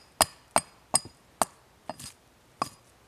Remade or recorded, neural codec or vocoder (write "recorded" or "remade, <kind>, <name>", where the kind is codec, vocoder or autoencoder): recorded